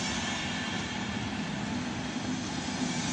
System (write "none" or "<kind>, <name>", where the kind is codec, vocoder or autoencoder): none